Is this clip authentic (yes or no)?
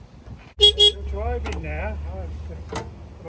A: yes